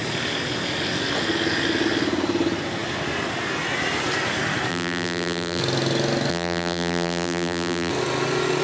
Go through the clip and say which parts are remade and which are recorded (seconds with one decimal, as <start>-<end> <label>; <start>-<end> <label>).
0.0-4.7 recorded; 4.7-5.6 remade; 5.6-6.3 recorded; 6.3-7.9 remade; 7.9-8.6 recorded